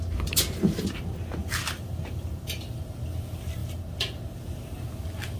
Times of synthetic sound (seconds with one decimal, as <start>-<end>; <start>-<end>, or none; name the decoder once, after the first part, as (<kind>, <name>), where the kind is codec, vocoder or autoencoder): 1.4-2.8 (vocoder, BigVGAN v2)